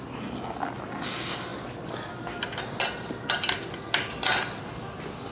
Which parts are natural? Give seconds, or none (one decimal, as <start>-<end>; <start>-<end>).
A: 0.0-5.3